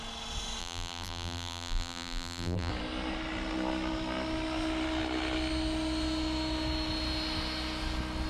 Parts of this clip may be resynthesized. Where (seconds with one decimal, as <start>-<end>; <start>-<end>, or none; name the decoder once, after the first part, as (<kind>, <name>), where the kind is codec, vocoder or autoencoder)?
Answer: 0.6-2.7 (vocoder, BigVGAN v2)